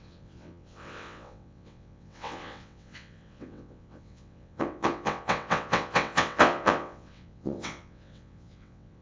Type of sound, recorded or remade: remade